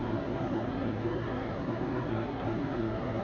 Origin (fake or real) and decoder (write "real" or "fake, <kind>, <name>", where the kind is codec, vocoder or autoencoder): fake, codec, SNAC